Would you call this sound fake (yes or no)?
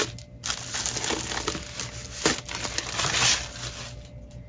no